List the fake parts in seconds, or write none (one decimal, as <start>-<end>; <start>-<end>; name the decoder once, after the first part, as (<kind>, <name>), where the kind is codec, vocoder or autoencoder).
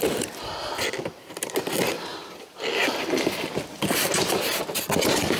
none